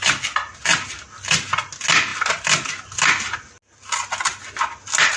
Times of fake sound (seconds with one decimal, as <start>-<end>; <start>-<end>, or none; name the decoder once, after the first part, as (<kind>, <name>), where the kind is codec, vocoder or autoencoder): none